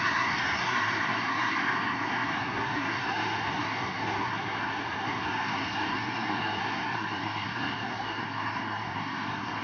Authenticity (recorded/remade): remade